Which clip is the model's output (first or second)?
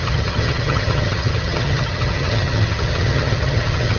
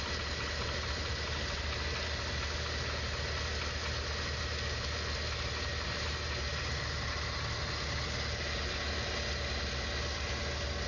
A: first